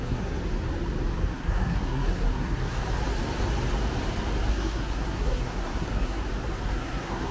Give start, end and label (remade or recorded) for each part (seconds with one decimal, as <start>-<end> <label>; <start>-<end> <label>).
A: 0.0-0.4 remade; 0.4-1.3 recorded; 1.3-2.8 remade; 2.8-4.5 recorded; 4.5-6.2 remade; 6.2-6.7 recorded; 6.7-7.3 remade